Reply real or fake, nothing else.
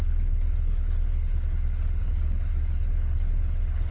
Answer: fake